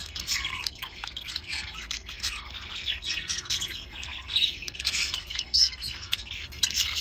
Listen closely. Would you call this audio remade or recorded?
remade